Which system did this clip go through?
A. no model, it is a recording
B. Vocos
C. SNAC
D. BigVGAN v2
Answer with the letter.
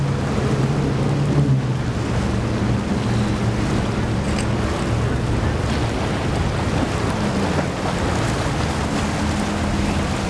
A